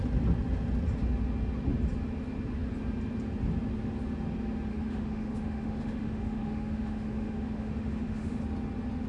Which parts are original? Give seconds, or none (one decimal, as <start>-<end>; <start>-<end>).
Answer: 0.0-4.7; 8.4-9.1